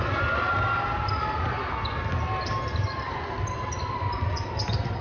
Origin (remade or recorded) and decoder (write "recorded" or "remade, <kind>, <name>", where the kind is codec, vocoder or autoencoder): recorded